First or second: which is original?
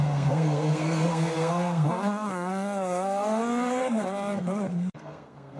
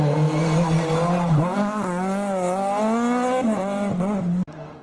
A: second